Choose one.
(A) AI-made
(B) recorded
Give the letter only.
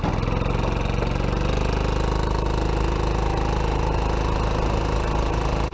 B